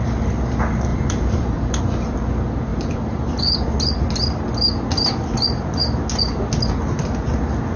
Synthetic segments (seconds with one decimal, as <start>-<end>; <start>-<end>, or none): 0.9-1.8; 2.7-3.4